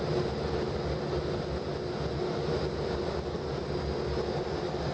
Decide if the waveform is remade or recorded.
recorded